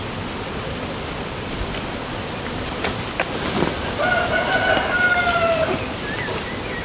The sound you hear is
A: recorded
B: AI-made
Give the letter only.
A